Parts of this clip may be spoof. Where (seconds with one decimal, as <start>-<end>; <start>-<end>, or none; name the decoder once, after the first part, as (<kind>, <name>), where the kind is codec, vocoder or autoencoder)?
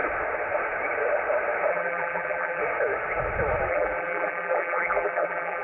1.7-2.6 (vocoder, BigVGAN v2); 3.7-5.6